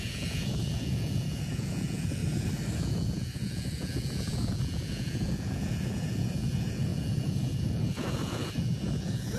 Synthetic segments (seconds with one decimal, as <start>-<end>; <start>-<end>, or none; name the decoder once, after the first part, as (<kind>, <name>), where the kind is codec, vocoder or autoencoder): 0.0-2.2 (vocoder, Vocos); 2.8-9.4